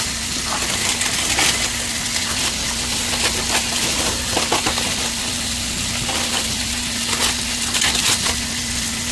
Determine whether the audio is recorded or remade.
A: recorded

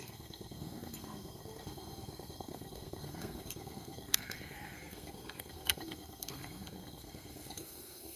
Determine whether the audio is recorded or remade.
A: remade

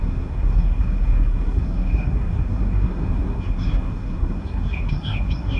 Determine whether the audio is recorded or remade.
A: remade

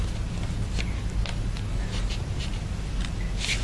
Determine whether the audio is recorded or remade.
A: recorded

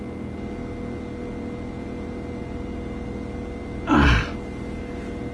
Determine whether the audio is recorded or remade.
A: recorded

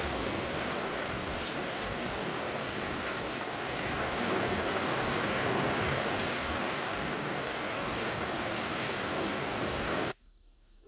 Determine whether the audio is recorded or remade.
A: remade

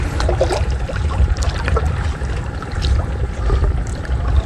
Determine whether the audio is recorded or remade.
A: recorded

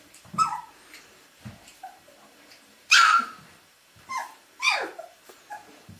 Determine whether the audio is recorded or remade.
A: remade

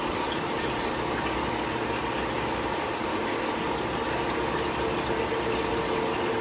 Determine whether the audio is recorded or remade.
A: recorded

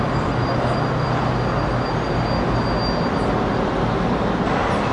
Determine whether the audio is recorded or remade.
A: recorded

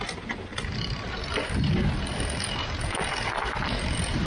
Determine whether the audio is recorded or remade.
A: recorded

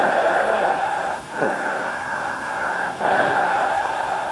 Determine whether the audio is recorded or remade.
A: remade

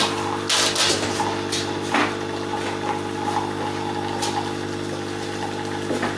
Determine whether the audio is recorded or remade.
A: recorded